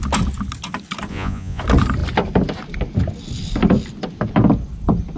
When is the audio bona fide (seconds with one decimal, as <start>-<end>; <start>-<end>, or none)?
0.0-1.1; 1.6-5.2

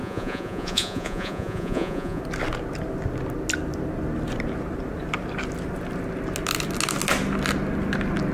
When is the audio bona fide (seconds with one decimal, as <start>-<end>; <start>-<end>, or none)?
2.2-8.3